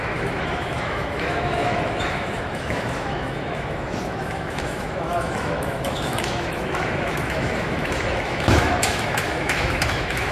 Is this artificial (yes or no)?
yes